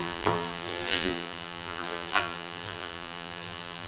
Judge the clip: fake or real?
fake